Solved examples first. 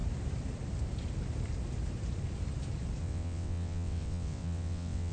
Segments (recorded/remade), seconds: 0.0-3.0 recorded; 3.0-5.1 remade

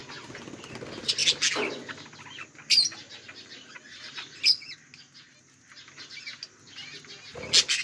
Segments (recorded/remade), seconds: 0.0-7.8 recorded

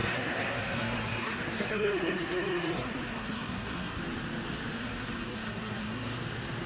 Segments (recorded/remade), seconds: 0.0-4.0 remade; 4.0-4.8 recorded; 4.8-6.2 remade; 6.2-6.7 recorded

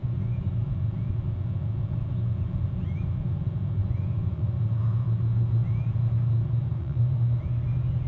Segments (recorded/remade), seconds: 0.0-0.5 remade; 0.5-3.8 recorded; 3.8-4.6 remade; 4.6-6.7 recorded; 6.7-7.4 remade; 7.4-8.1 recorded

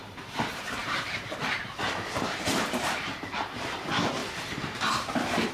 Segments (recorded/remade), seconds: 0.0-5.5 remade